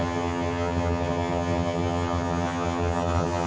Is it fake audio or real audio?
fake